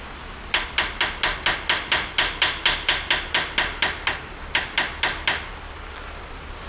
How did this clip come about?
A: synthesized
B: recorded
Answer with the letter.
B